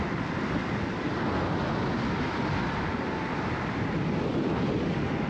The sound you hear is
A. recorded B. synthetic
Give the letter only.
A